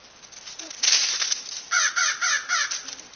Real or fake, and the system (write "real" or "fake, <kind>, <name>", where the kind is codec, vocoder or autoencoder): real